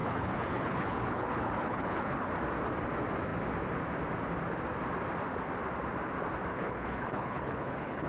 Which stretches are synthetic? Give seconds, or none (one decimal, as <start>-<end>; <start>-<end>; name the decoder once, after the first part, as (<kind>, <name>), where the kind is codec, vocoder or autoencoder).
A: 0.0-2.3 (codec, HILCodec); 6.5-8.1